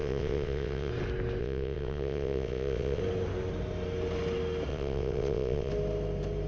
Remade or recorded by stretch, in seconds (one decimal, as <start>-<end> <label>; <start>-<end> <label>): 0.0-0.9 remade; 0.9-1.4 recorded; 1.4-3.0 remade; 3.0-4.7 recorded; 4.7-5.7 remade; 5.7-6.5 recorded